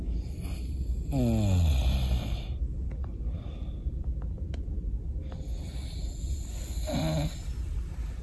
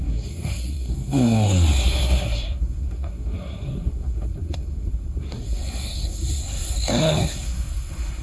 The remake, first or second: second